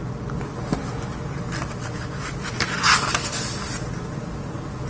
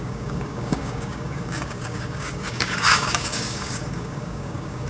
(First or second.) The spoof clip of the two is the second